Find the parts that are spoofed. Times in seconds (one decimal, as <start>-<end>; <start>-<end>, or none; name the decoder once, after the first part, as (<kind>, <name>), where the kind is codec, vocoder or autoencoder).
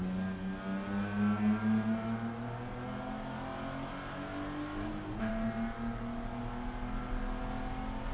none